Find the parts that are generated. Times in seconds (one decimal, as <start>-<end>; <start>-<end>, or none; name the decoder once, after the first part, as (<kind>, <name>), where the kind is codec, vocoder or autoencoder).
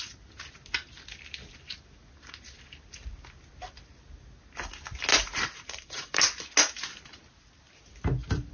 5.1-6.2 (vocoder, BigVGAN v2)